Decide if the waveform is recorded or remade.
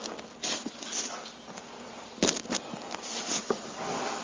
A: recorded